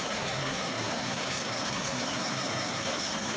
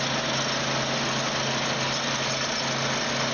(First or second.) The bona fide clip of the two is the second